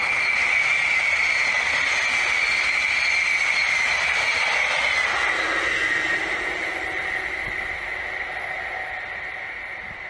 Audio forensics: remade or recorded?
recorded